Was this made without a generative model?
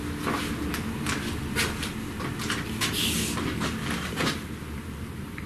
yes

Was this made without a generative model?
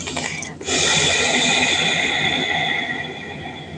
yes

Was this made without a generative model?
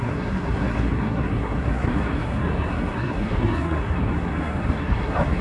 no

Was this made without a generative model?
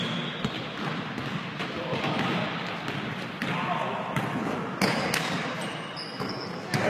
yes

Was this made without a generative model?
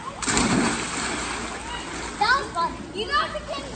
yes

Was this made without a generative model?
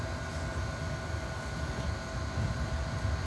yes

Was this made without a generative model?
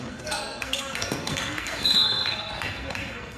no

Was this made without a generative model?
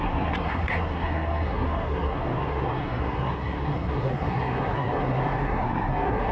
no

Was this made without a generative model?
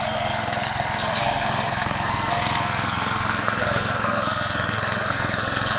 no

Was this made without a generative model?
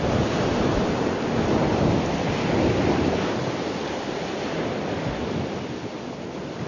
yes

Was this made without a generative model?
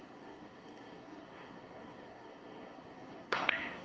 no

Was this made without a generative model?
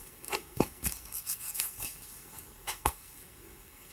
no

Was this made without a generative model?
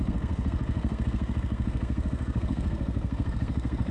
no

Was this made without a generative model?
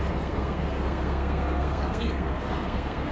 no